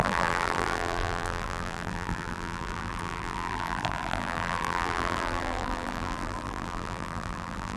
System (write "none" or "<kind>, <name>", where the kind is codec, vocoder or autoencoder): vocoder, BigVGAN v2